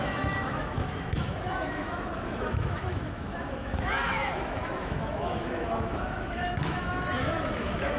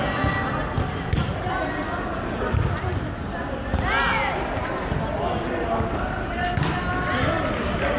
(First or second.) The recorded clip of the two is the second